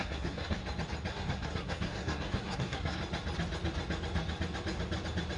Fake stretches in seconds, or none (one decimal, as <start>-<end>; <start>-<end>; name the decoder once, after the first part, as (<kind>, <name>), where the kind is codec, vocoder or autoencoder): 0.0-0.6 (codec, SNAC); 1.1-3.0